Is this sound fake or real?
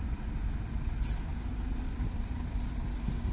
real